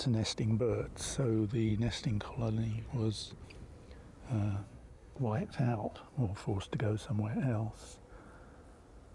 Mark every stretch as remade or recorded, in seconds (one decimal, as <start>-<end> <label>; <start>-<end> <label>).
0.0-4.6 recorded; 4.6-6.0 remade; 6.0-9.1 recorded